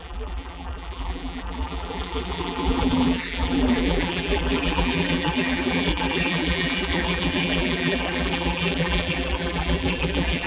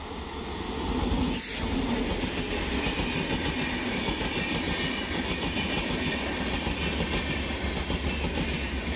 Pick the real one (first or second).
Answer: second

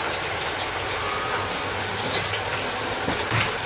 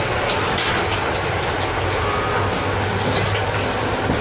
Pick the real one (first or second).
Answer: second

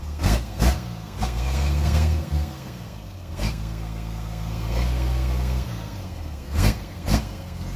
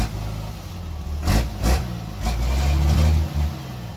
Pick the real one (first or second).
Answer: second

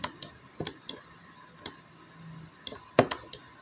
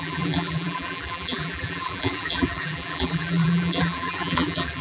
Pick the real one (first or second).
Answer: first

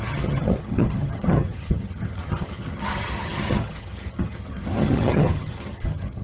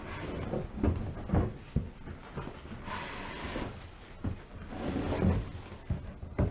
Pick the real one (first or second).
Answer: second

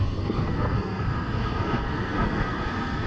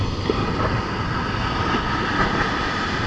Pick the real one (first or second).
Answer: second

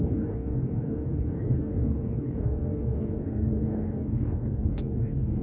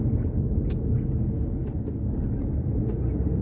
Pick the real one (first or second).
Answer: second